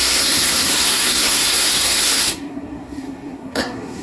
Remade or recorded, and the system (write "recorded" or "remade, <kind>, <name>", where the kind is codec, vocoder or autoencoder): remade, codec, SNAC